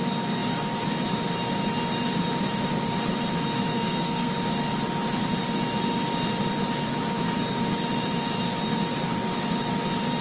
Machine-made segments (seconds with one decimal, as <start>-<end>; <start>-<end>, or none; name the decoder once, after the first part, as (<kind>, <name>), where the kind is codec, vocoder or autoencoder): 3.7-4.3 (codec, SNAC)